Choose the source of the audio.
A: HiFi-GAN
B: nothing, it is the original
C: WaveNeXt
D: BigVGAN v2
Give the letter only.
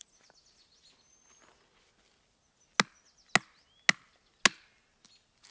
B